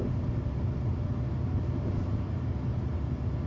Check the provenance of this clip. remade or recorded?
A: recorded